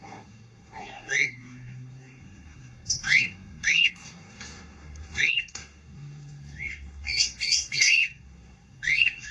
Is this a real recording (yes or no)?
no